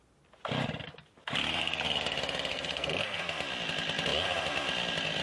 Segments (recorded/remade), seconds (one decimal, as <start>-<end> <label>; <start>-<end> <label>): 0.0-2.5 recorded; 2.5-3.2 remade; 3.2-5.2 recorded